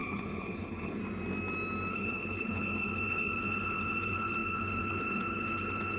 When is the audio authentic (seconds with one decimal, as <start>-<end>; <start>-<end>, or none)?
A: 1.0-1.9